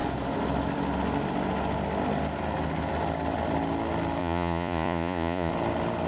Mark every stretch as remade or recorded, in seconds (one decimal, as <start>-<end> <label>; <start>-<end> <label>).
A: 0.0-4.2 recorded; 4.2-5.5 remade; 5.5-6.1 recorded